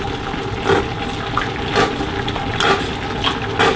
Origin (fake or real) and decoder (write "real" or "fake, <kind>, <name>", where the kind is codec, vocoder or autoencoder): real